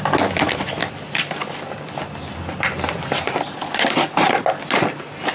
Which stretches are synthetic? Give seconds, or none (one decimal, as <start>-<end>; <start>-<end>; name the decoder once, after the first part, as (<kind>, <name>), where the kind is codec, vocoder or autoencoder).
none